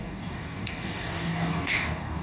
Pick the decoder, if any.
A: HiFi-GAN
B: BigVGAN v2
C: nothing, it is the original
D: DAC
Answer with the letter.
D